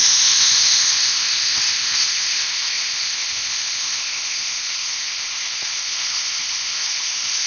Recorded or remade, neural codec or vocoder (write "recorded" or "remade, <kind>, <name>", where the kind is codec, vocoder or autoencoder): remade, codec, ZipCodec